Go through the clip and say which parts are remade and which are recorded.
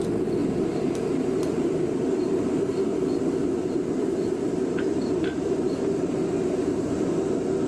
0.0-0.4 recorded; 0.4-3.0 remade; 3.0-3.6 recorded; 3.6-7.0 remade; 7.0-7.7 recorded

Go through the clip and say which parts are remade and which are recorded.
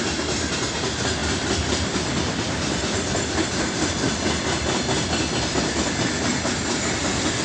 0.0-1.2 recorded; 1.2-5.6 remade; 5.6-7.4 recorded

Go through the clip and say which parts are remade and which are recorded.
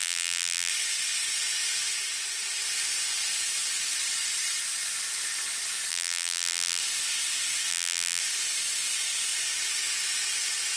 0.0-0.7 remade; 0.7-5.9 recorded; 5.9-6.8 remade; 6.8-7.7 recorded; 7.7-8.2 remade; 8.2-10.8 recorded